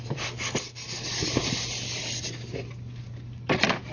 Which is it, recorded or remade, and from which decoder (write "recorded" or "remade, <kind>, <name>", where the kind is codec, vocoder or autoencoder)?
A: recorded